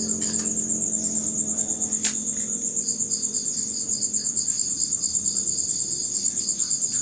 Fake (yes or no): no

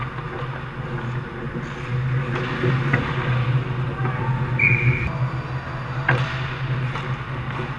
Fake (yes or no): no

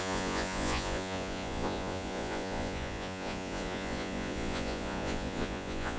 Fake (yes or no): yes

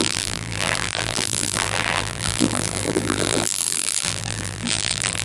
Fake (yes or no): yes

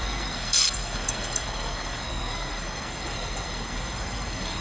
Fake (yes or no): yes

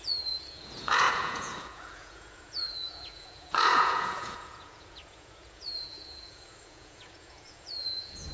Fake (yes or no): yes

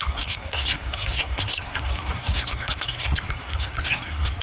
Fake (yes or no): yes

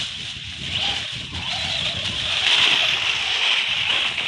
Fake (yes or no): no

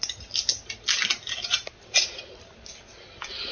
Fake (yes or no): no